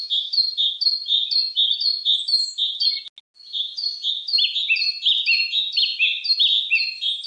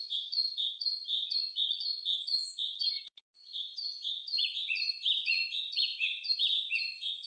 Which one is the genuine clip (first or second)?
first